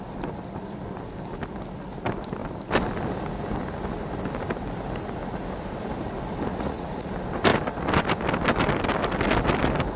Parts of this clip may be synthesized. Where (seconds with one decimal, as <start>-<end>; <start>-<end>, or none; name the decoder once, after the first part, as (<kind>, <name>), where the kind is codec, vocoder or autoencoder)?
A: 6.5-7.1 (vocoder, Vocos)